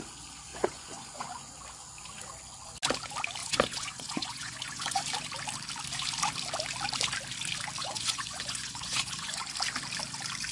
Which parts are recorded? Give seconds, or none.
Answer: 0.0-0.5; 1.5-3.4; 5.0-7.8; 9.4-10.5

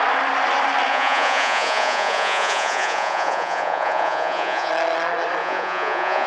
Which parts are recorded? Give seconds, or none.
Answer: 0.0-0.9; 4.7-5.4

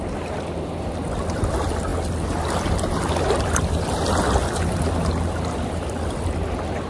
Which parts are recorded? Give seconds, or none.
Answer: 0.0-6.9

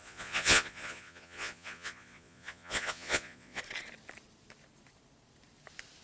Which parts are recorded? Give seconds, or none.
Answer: 3.6-6.0

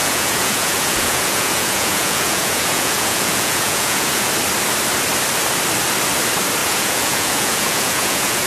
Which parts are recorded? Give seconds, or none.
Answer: 4.3-6.6

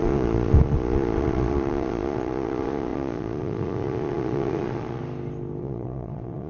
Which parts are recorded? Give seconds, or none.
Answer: 5.0-5.6

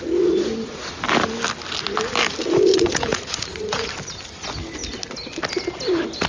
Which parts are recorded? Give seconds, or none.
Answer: 0.0-2.7; 3.9-6.3